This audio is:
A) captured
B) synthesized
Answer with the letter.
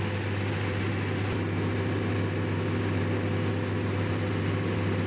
A